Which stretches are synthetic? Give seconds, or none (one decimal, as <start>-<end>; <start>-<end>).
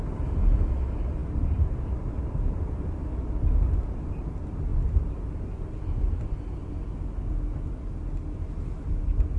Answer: none